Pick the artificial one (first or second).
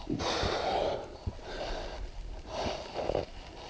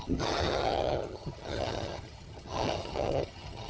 second